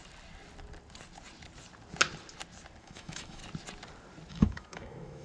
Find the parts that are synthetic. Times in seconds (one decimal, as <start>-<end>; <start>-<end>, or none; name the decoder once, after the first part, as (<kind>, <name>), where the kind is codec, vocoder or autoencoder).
2.8-3.4 (autoencoder, DAC-VAE); 4.3-5.2